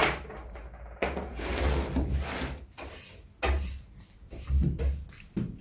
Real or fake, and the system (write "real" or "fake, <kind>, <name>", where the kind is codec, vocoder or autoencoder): real